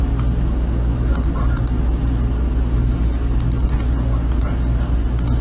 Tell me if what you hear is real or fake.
real